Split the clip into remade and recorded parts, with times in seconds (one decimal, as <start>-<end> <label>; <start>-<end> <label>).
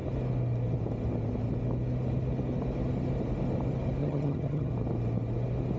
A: 0.0-4.0 recorded; 4.0-4.7 remade; 4.7-5.8 recorded